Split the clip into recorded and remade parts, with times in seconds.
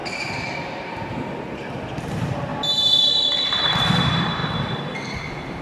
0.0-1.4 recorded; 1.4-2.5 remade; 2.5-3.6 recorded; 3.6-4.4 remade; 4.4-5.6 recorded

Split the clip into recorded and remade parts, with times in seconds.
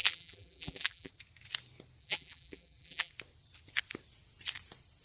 0.0-1.1 remade; 1.1-2.0 recorded; 2.0-3.1 remade; 3.1-5.0 recorded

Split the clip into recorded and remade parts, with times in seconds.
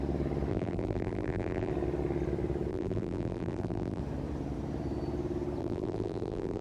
0.0-0.5 recorded; 0.5-1.7 remade; 1.7-2.7 recorded; 2.7-4.0 remade; 4.0-5.6 recorded; 5.6-6.6 remade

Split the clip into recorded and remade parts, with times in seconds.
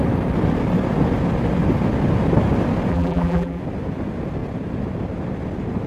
0.0-2.9 recorded; 2.9-3.6 remade; 3.6-5.9 recorded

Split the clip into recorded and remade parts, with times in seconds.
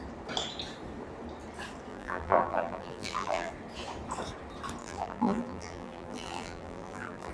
0.0-1.9 recorded; 1.9-3.5 remade; 3.5-4.8 recorded; 4.8-7.3 remade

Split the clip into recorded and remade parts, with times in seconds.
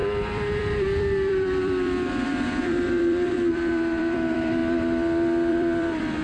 0.0-4.6 remade; 4.6-5.5 recorded; 5.5-6.2 remade